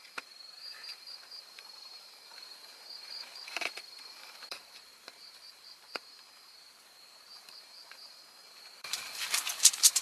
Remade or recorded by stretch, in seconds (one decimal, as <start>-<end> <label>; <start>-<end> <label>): 0.0-10.0 remade